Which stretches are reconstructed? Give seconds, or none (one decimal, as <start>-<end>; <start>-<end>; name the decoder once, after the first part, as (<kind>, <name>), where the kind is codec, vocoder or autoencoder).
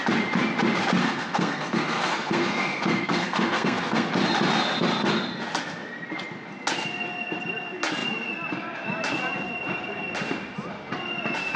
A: 1.0-4.1 (codec, SNAC)